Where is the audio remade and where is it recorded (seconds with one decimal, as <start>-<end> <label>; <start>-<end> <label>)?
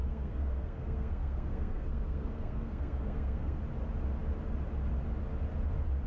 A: 0.0-3.6 remade; 3.6-6.1 recorded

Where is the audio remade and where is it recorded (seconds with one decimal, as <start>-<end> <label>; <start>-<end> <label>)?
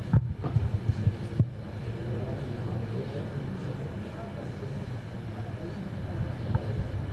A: 0.0-7.1 recorded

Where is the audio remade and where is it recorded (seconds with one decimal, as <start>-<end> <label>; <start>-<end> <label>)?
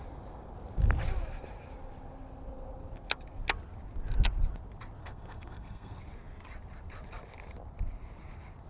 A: 0.0-5.0 recorded; 5.0-6.0 remade; 6.0-8.7 recorded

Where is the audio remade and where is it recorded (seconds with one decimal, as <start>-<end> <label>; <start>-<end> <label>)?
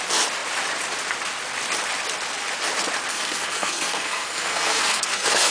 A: 0.0-3.1 recorded; 3.1-5.5 remade